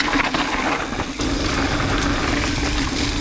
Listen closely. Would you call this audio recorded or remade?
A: recorded